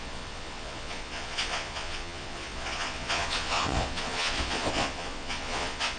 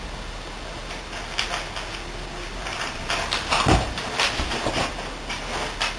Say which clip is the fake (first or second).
first